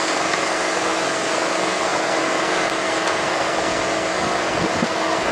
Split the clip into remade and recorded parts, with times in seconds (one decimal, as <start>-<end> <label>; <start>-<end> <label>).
0.0-5.3 remade